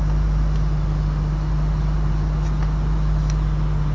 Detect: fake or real real